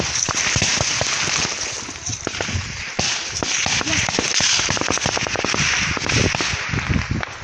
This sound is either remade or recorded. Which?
recorded